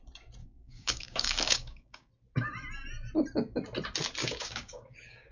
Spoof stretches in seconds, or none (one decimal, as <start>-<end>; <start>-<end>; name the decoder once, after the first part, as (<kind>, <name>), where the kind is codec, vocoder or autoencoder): 0.4-2.1 (codec, DAC); 4.2-5.3